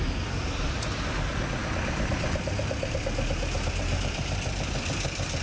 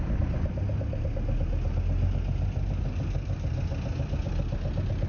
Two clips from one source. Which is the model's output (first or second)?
first